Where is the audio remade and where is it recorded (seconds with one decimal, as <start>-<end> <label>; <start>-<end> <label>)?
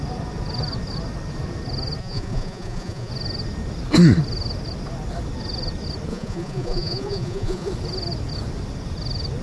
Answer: 0.0-2.0 recorded; 2.0-3.1 remade; 3.1-6.1 recorded; 6.1-7.7 remade; 7.7-9.4 recorded